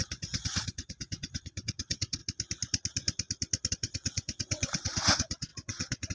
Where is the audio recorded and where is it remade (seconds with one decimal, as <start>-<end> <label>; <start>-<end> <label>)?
0.0-2.2 remade; 2.2-3.7 recorded; 3.7-6.1 remade

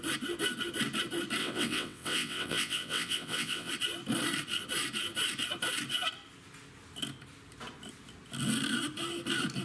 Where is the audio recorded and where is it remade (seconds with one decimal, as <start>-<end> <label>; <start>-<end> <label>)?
0.0-1.4 recorded; 1.4-3.7 remade; 3.7-9.6 recorded